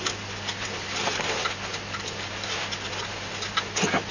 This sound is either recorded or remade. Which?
recorded